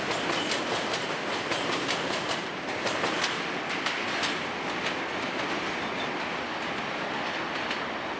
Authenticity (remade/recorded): recorded